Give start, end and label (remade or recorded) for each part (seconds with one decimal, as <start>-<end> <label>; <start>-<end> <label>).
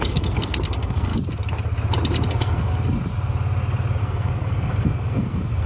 0.0-1.1 remade; 1.1-2.3 recorded; 2.3-2.7 remade; 2.7-4.0 recorded; 4.0-5.7 remade